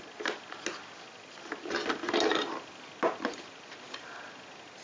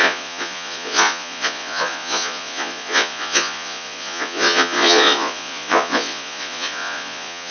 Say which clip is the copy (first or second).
second